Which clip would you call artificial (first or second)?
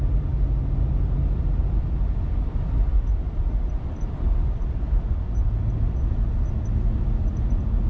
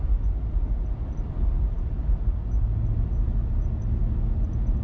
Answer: first